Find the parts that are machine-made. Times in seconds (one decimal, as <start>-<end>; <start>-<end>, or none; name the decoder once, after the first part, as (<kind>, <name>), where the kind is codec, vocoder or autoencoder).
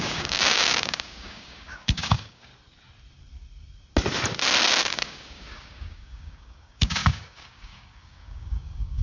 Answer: 0.0-2.5 (codec, DAC); 4.9-9.0